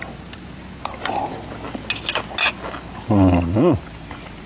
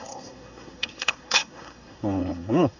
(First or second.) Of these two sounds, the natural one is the first